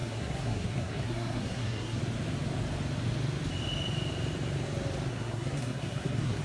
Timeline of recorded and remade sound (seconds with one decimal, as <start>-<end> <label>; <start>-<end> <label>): 0.0-2.0 remade; 2.0-5.1 recorded; 5.1-6.4 remade